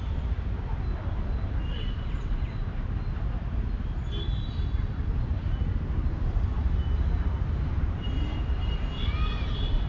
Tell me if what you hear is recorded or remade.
recorded